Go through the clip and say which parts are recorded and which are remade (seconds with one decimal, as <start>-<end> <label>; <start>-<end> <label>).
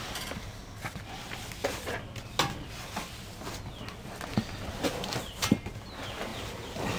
0.0-0.6 remade; 0.6-4.6 recorded; 4.6-7.0 remade